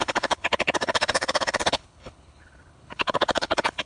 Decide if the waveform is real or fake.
fake